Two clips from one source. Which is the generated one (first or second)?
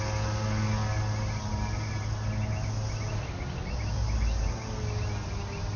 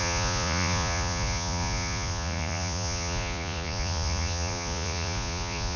second